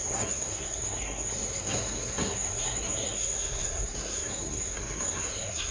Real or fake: fake